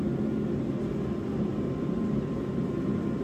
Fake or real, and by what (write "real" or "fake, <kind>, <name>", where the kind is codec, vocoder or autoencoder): real